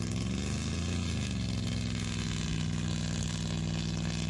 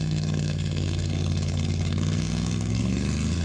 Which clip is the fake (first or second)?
second